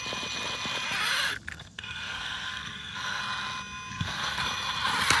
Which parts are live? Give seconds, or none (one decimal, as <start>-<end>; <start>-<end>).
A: 0.0-1.5; 3.2-3.9; 4.4-5.2